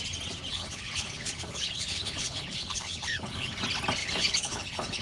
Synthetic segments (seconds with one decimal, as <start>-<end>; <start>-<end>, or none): 0.5-3.5; 4.0-5.0